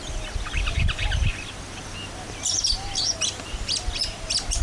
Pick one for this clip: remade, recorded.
recorded